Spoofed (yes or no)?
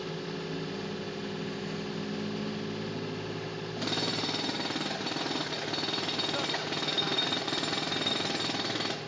no